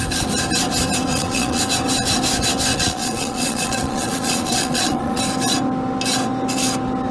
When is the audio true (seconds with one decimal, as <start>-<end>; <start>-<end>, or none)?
0.0-1.1; 1.6-2.7; 5.2-7.1